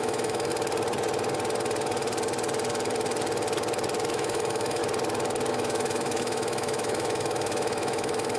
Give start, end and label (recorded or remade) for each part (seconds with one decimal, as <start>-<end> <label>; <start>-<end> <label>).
0.0-0.5 remade; 0.5-4.1 recorded; 4.1-4.8 remade; 4.8-5.5 recorded; 5.5-8.4 remade